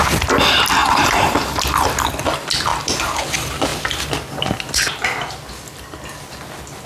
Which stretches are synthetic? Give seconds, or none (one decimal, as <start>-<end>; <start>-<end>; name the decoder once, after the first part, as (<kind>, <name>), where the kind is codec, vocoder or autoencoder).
0.8-1.6 (vocoder, BigVGAN v2)

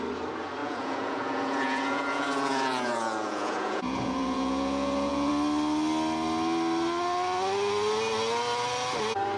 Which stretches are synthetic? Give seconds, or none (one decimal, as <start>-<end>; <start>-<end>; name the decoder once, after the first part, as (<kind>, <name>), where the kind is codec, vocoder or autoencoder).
0.6-5.3 (vocoder, Vocos)

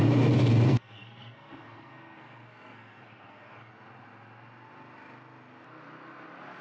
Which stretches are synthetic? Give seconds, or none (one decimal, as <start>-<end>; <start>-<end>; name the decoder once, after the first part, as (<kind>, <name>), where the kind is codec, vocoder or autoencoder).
0.5-3.7 (codec, SNAC)

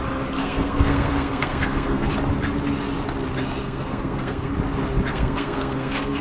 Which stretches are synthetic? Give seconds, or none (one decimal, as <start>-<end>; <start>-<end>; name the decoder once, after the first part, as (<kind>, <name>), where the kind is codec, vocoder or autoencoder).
0.4-2.1 (codec, SNAC); 3.6-4.5; 5.1-6.2

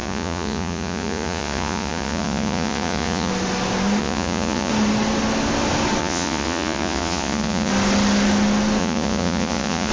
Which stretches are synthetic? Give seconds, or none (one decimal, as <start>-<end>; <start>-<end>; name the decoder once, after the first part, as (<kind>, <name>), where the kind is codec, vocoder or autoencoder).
0.0-3.3 (vocoder, Vocos); 4.0-4.7; 6.0-7.7; 8.8-9.9

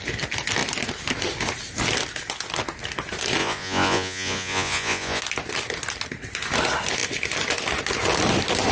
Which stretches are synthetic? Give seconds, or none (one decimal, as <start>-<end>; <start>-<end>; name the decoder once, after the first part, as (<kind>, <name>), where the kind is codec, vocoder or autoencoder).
3.4-5.2 (vocoder, Vocos)

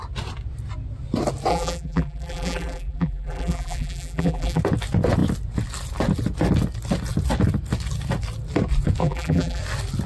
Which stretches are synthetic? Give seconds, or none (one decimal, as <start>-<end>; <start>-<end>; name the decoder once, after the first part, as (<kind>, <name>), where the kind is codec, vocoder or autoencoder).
1.5-4.6 (vocoder, BigVGAN v2); 9.0-9.6

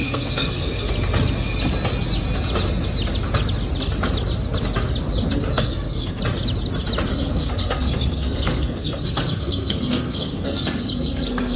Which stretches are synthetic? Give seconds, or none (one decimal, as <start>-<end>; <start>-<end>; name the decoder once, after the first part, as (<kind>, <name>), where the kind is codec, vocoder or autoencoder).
0.0-0.9 (codec, SNAC); 5.5-6.2; 7.1-11.6